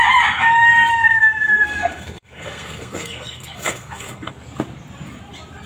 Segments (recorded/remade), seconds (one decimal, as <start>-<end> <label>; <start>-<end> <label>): 0.0-0.9 recorded; 0.9-4.3 remade; 4.3-5.7 recorded